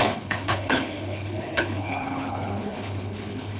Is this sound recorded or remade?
remade